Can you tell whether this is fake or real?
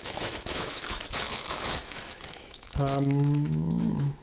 fake